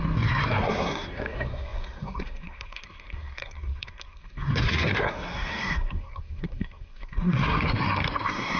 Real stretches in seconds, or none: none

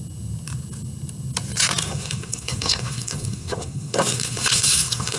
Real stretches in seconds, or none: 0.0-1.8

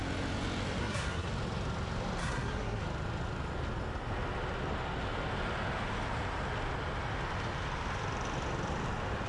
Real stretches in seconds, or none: 0.0-0.8; 1.3-2.2; 2.8-9.3

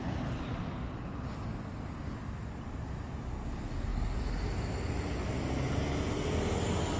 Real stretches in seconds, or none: 0.0-7.0

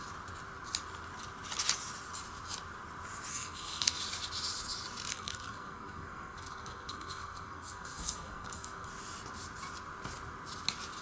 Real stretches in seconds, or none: 0.0-3.3; 4.0-5.1; 8.9-11.0